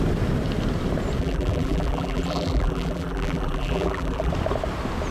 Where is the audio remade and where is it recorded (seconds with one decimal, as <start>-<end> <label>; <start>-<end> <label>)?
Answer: 0.0-1.2 recorded; 1.2-4.3 remade; 4.3-5.1 recorded